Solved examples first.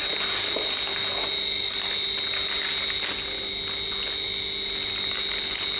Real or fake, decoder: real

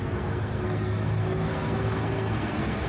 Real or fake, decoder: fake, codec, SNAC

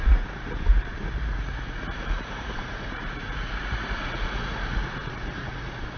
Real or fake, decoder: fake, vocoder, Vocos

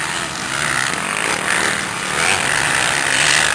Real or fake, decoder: real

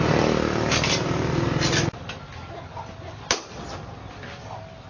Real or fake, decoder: real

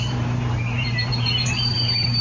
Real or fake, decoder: fake, vocoder, BigVGAN v2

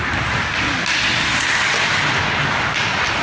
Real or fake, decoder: real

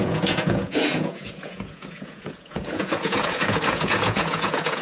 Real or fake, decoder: fake, vocoder, Vocos